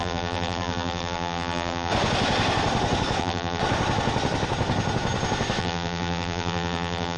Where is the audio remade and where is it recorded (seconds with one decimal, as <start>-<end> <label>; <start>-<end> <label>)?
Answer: 0.0-1.9 remade; 1.9-3.2 recorded; 3.2-3.6 remade; 3.6-5.6 recorded; 5.6-7.2 remade